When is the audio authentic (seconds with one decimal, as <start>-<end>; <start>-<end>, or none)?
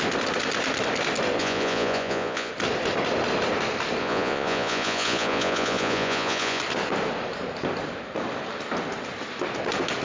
0.0-1.4; 2.5-4.0; 6.6-10.0